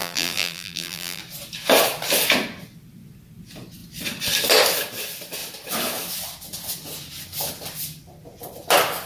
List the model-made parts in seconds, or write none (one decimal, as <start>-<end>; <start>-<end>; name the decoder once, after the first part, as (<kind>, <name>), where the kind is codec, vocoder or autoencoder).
0.0-1.2 (vocoder, BigVGAN v2)